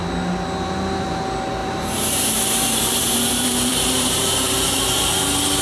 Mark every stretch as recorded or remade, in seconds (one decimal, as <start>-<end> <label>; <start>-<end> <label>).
0.0-1.6 recorded; 1.6-5.0 remade; 5.0-5.6 recorded